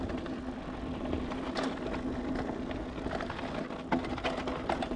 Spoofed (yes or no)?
no